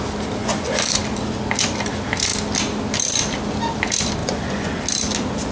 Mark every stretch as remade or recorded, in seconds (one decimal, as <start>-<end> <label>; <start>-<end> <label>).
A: 0.0-0.4 recorded; 0.4-1.0 remade; 1.0-4.2 recorded; 4.2-4.8 remade; 4.8-5.5 recorded